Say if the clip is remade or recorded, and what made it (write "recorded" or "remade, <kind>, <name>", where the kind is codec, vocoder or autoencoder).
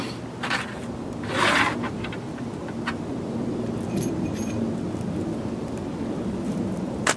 recorded